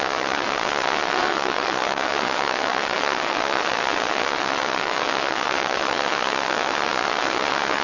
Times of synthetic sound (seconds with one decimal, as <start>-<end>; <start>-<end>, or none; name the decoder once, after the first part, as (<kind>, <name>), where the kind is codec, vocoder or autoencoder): 0.0-7.8 (vocoder, WaveNeXt)